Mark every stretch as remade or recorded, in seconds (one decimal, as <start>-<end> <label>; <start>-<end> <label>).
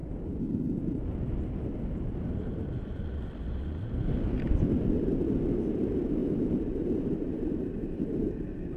0.0-6.2 recorded; 6.2-8.3 remade; 8.3-8.8 recorded